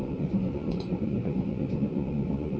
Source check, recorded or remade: remade